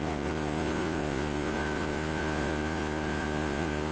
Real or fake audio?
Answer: fake